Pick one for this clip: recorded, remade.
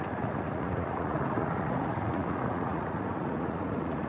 remade